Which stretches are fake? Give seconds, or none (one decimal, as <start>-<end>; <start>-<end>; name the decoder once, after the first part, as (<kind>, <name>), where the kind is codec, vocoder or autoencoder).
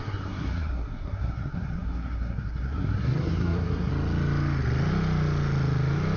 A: 0.0-3.9 (codec, SNAC)